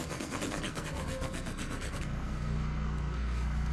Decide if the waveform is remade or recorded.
remade